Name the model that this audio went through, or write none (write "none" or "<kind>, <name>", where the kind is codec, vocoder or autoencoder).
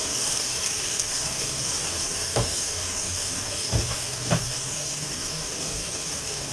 codec, DAC